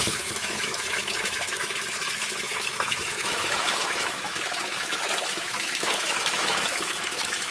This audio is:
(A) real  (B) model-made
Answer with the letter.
B